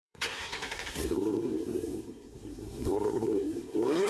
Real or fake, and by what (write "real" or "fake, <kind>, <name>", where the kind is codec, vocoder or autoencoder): fake, codec, SNAC